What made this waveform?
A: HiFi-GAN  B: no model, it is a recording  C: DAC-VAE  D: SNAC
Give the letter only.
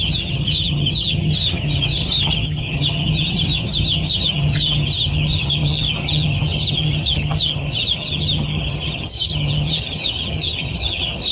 A